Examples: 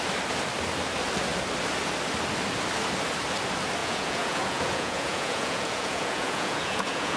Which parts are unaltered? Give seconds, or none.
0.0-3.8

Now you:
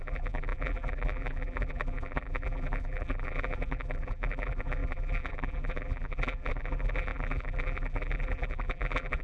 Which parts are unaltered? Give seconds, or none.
none

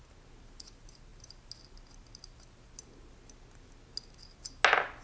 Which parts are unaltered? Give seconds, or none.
0.0-5.0

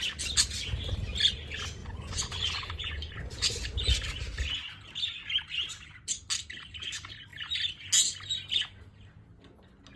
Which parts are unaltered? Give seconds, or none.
0.0-1.8; 3.9-10.0

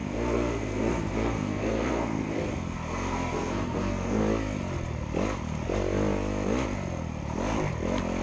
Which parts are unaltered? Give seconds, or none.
4.2-8.2

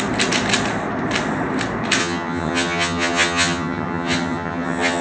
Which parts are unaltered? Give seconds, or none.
0.0-2.0

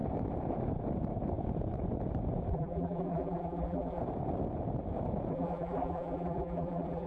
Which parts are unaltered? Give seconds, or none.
0.0-2.5; 4.0-5.3

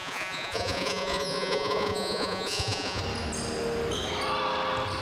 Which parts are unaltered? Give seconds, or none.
3.0-5.0